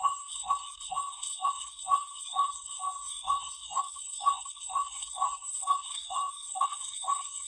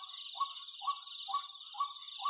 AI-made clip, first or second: first